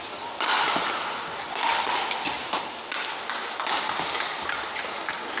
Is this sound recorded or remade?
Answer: recorded